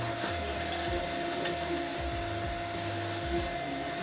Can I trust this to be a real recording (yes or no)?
yes